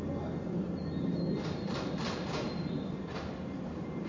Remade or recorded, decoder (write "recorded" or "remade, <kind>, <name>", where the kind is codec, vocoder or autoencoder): recorded